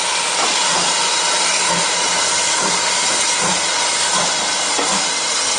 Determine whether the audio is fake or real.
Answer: real